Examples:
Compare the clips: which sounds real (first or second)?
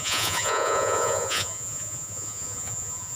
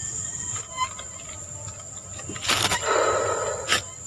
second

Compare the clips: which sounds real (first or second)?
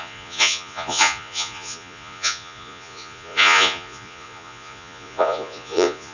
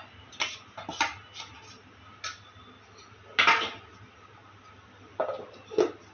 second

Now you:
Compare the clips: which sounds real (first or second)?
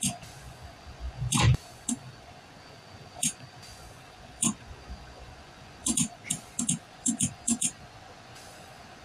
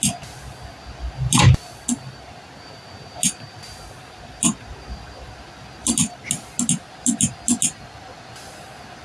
second